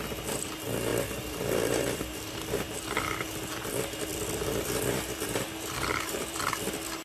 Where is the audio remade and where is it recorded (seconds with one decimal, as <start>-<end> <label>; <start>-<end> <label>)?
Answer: 0.0-0.9 recorded; 0.9-3.5 remade; 3.5-4.1 recorded; 4.1-7.0 remade